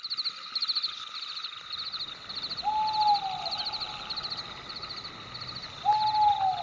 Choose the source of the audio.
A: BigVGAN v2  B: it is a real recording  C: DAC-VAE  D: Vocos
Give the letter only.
B